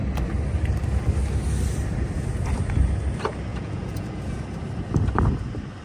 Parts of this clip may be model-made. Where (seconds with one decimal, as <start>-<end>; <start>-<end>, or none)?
3.5-4.4